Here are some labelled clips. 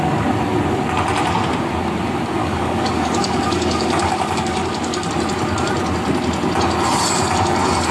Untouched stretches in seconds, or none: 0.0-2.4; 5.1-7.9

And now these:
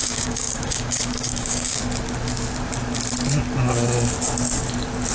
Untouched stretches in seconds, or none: 1.8-5.1

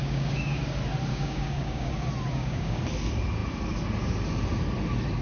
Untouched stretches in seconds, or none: 0.6-1.1; 1.9-2.3; 2.8-5.2

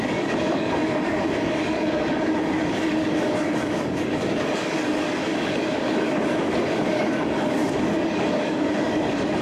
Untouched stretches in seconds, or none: none

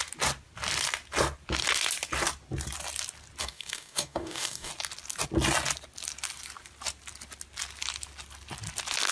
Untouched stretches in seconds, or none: 0.0-3.4; 4.7-9.1

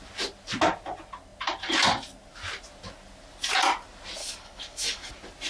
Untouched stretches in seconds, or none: 0.0-4.2; 5.1-5.5

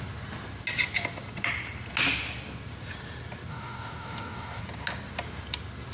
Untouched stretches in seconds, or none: 0.0-3.5; 4.6-5.9